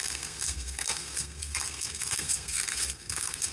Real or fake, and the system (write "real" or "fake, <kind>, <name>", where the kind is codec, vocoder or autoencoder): fake, codec, SNAC